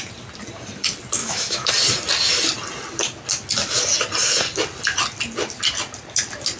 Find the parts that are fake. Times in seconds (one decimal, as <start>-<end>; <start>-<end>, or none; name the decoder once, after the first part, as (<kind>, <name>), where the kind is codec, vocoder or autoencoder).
1.2-1.7 (autoencoder, DAC-VAE)